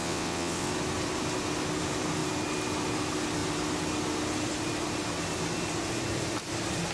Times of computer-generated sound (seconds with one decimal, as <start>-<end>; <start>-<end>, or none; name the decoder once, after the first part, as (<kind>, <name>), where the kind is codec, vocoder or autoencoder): 0.0-0.7 (vocoder, WaveNeXt)